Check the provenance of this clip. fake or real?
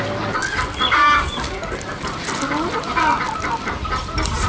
real